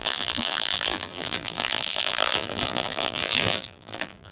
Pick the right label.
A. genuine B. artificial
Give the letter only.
B